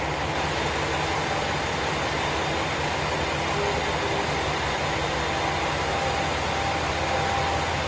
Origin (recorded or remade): recorded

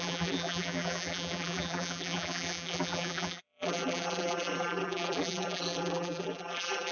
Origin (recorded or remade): remade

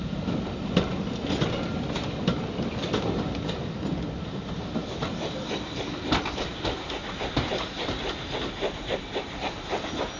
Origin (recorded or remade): recorded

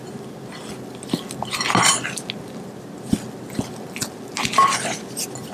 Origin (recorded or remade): recorded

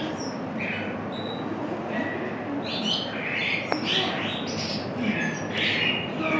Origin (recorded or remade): recorded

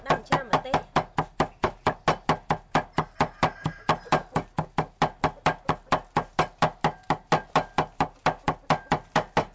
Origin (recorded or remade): recorded